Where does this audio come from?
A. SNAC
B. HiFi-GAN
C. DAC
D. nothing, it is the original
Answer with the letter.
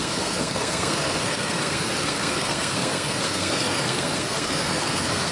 A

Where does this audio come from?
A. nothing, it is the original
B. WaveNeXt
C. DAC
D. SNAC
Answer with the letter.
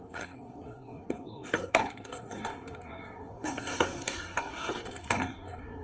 D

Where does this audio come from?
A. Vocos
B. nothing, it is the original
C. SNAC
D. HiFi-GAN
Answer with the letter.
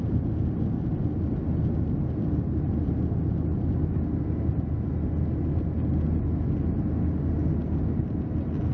B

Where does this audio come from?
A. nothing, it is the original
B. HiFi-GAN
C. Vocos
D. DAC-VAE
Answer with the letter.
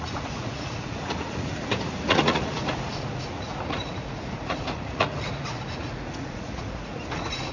C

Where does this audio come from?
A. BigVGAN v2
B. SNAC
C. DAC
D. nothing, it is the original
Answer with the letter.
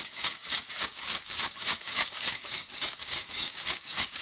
C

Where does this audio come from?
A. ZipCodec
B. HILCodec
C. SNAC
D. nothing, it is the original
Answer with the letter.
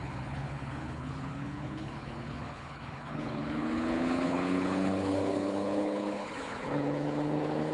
B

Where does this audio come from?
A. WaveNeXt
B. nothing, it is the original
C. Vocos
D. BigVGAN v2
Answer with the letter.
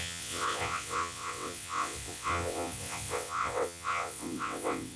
A